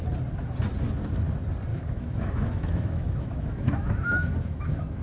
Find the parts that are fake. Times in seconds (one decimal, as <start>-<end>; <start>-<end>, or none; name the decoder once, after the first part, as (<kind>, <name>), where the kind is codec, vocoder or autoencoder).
1.7-5.0 (autoencoder, DAC-VAE)